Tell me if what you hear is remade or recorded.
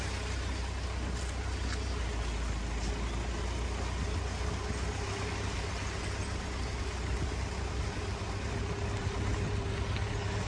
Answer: recorded